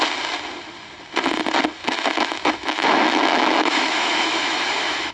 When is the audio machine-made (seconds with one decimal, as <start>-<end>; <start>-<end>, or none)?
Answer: 1.8-5.1